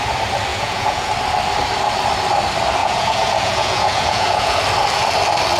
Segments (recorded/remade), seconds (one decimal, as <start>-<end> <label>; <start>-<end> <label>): 0.0-0.5 recorded; 0.5-1.1 remade; 1.1-2.8 recorded; 2.8-4.6 remade; 4.6-5.6 recorded